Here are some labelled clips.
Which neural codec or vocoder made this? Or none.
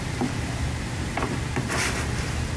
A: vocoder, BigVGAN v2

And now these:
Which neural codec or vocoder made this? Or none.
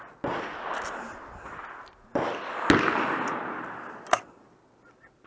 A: none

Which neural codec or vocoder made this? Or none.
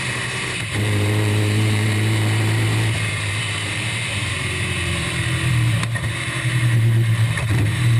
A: vocoder, BigVGAN v2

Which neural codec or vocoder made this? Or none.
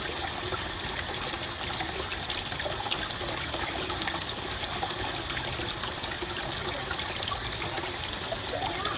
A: none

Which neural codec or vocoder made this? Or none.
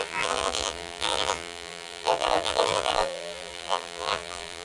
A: vocoder, BigVGAN v2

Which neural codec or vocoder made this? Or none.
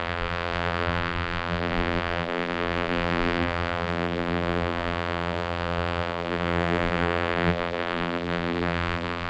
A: vocoder, BigVGAN v2